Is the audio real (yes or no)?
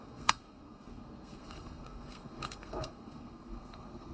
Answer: no